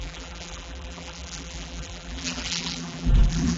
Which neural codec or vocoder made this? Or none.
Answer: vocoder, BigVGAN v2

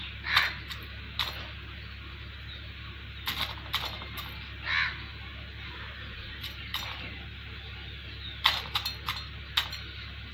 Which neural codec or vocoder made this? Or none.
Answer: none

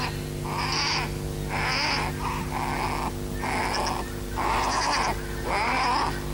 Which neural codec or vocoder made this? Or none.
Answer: none